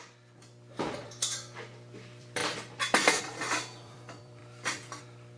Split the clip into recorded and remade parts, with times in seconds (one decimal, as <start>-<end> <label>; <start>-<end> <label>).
0.0-5.4 remade